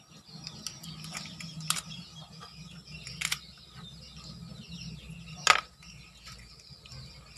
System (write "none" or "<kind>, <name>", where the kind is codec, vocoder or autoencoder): none